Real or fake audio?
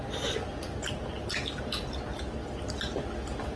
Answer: real